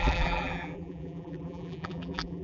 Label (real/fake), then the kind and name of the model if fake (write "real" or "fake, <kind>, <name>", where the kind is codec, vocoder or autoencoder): fake, vocoder, BigVGAN v2